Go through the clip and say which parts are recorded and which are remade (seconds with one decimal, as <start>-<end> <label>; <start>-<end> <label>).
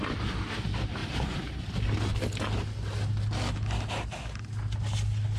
0.0-1.0 recorded; 1.0-1.6 remade; 1.6-5.4 recorded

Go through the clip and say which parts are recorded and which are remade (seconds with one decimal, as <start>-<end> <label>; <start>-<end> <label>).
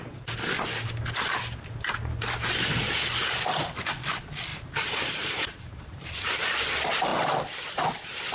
0.0-4.5 recorded; 4.5-6.3 remade; 6.3-8.3 recorded